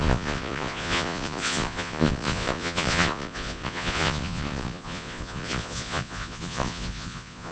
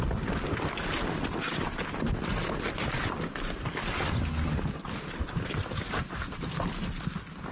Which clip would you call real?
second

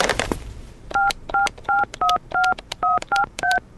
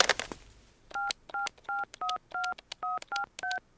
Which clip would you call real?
second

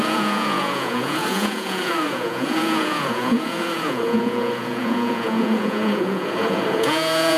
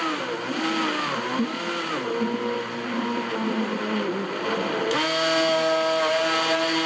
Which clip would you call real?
second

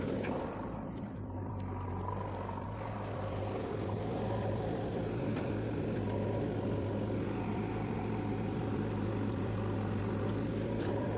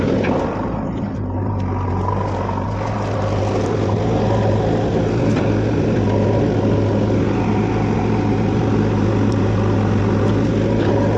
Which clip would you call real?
second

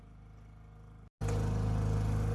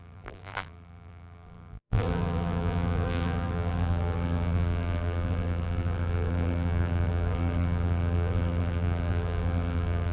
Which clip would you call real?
first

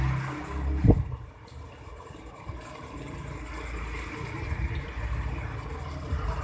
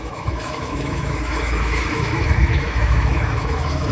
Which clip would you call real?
first